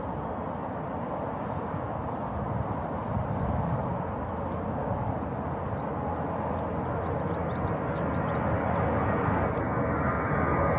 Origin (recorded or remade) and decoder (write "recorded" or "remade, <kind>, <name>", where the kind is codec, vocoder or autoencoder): recorded